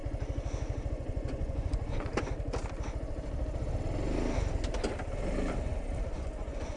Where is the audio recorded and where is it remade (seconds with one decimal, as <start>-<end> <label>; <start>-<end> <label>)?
0.0-0.9 recorded; 0.9-2.1 remade; 2.1-6.2 recorded; 6.2-6.8 remade